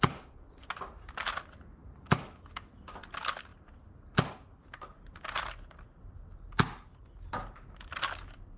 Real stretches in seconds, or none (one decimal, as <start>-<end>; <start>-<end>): 0.0-8.6